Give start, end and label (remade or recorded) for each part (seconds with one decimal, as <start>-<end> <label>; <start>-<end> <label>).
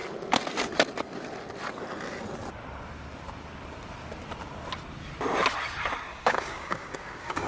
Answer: 0.0-6.1 recorded; 6.1-7.5 remade